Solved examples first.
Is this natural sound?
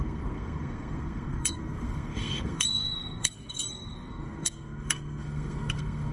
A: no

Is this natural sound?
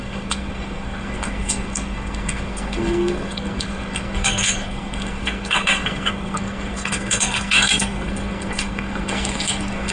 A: no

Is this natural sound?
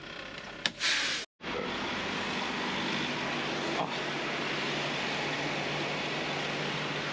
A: yes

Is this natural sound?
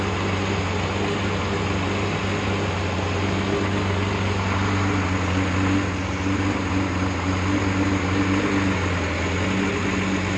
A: yes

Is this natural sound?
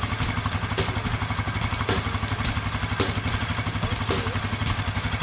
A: yes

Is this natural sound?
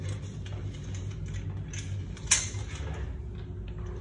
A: yes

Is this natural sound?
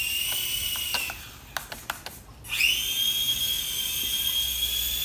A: yes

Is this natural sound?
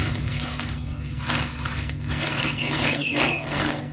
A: no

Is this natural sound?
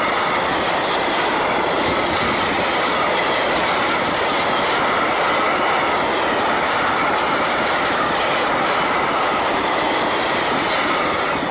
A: yes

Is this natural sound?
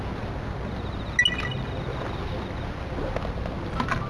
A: yes